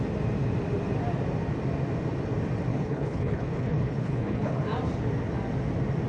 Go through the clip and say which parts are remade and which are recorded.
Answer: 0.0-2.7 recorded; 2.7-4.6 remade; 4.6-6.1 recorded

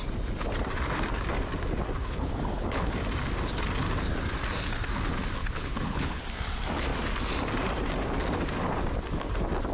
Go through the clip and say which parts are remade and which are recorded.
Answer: 0.0-2.0 recorded; 2.0-2.9 remade; 2.9-5.4 recorded; 5.4-6.2 remade; 6.2-9.7 recorded

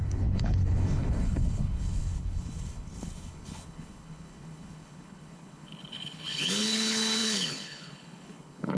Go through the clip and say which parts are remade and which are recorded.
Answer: 0.0-8.8 remade